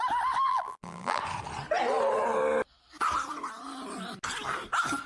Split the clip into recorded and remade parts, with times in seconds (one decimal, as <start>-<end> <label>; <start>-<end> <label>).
0.0-0.5 recorded; 0.5-1.2 remade; 1.2-5.1 recorded